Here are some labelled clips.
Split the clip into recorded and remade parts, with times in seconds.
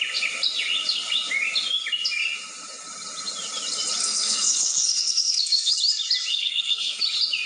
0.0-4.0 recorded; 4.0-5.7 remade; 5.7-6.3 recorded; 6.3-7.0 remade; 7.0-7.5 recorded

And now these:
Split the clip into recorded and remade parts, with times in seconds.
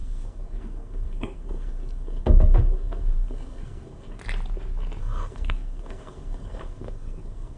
0.0-4.2 remade; 4.2-5.0 recorded; 5.0-7.6 remade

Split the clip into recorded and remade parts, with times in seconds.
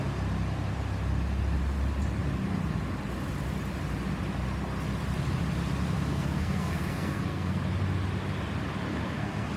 0.0-6.1 recorded; 6.1-7.6 remade; 7.6-8.9 recorded; 8.9-9.6 remade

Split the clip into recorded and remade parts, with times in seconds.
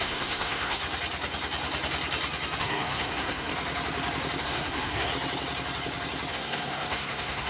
0.0-0.8 remade; 0.8-2.6 recorded; 2.6-3.5 remade; 3.5-4.4 recorded; 4.4-5.1 remade; 5.1-6.3 recorded; 6.3-7.5 remade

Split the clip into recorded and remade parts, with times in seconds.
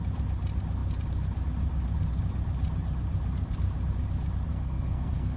0.0-4.5 recorded; 4.5-5.4 remade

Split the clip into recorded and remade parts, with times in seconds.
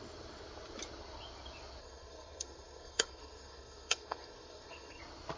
0.0-1.8 recorded; 1.8-5.0 remade; 5.0-5.4 recorded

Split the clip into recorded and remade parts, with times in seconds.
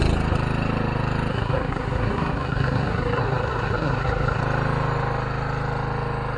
0.0-1.3 recorded; 1.3-4.4 remade; 4.4-6.4 recorded